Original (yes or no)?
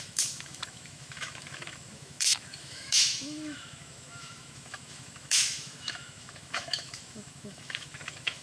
no